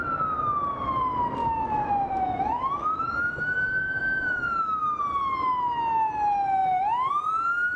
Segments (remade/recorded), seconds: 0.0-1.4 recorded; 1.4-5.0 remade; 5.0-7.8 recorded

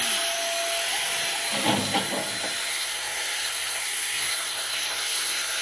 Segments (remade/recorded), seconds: 0.0-2.7 recorded; 2.7-5.6 remade